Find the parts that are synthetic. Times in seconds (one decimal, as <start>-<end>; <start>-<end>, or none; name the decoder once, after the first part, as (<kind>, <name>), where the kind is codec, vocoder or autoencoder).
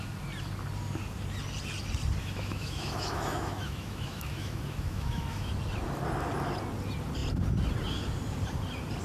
2.2-5.5 (autoencoder, DAC-VAE)